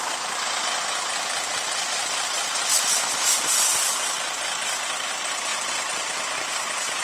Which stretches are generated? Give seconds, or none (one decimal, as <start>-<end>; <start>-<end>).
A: none